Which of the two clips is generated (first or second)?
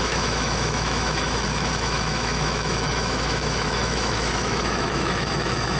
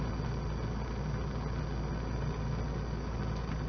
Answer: first